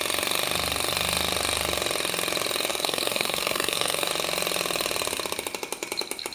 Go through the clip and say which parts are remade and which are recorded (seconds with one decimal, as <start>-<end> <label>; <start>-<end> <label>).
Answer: 0.0-2.7 recorded; 2.7-4.1 remade; 4.1-6.3 recorded